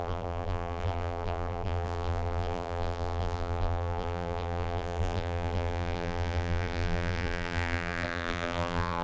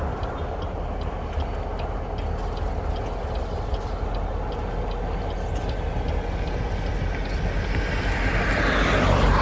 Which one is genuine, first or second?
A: second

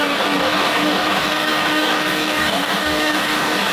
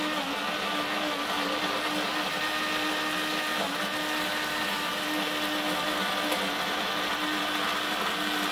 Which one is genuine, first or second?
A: second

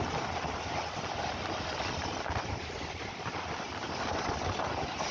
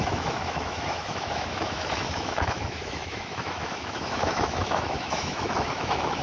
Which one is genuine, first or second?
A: first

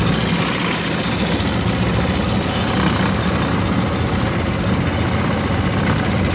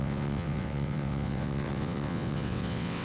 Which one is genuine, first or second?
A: first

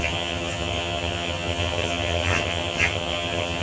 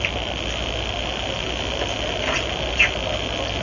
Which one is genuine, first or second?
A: second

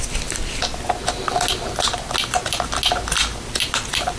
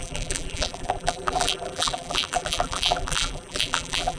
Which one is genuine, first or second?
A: first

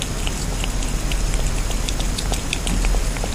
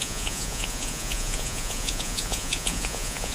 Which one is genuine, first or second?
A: first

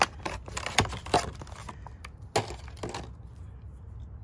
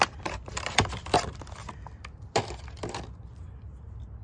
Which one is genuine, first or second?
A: first